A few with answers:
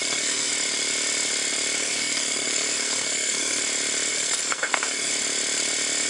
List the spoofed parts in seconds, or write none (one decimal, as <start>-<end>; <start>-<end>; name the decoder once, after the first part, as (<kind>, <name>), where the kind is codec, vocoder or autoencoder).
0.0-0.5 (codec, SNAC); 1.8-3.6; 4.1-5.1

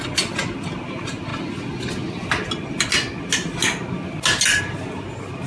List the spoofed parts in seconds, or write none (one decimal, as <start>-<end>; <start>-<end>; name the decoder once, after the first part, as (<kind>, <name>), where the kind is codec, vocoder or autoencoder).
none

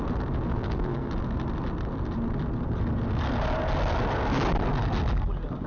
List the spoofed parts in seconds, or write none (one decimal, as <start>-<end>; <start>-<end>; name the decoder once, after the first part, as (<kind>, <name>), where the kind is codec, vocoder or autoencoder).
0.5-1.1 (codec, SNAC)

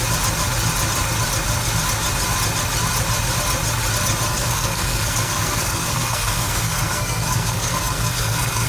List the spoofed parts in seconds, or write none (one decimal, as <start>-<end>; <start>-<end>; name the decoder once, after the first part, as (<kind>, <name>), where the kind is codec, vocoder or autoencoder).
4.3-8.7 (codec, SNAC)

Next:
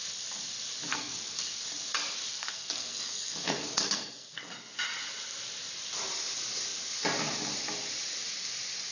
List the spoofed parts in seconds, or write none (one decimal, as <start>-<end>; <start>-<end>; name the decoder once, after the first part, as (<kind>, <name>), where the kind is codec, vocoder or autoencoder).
0.9-1.6 (codec, SNAC); 2.3-4.5

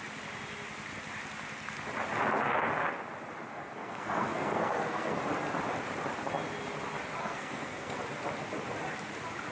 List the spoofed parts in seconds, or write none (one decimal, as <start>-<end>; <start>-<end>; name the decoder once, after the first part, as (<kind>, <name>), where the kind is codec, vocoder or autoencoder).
3.5-5.2 (codec, SNAC); 7.2-8.0